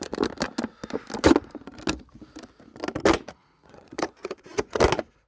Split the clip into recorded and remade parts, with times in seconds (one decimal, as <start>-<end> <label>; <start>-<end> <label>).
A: 0.0-3.4 recorded; 3.4-4.8 remade; 4.8-5.3 recorded